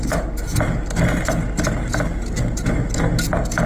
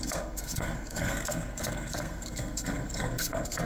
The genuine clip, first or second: first